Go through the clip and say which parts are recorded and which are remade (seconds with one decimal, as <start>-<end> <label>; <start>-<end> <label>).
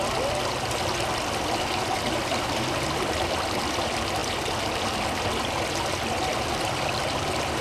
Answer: 0.0-6.3 recorded; 6.3-7.6 remade